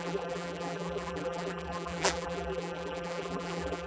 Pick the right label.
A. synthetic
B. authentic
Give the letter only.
A